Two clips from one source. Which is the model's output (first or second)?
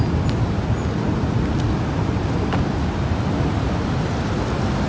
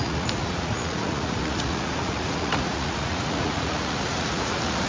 second